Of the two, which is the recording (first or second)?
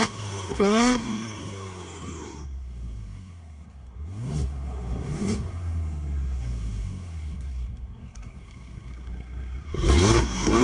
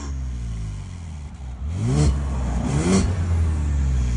second